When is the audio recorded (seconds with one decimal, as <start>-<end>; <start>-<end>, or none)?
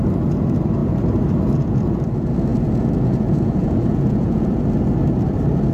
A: 0.0-2.5; 4.6-5.7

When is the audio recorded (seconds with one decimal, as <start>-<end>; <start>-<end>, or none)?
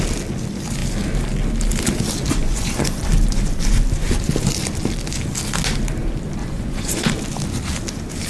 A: 0.0-2.4; 3.0-6.4; 7.1-8.3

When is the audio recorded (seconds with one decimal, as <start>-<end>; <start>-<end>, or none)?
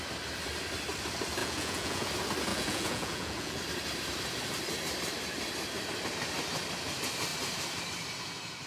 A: 0.0-1.4; 2.1-2.5; 3.6-8.7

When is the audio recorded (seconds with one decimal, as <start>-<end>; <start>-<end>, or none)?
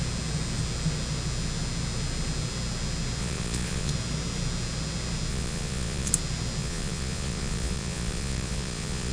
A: 0.0-3.2; 3.9-5.3; 6.1-6.6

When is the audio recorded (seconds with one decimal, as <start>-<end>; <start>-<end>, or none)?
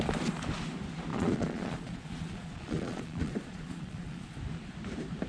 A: 0.0-1.1; 4.3-5.3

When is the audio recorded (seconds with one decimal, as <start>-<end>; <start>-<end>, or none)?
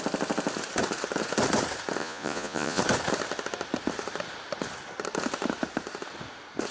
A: 0.0-2.0; 2.8-6.7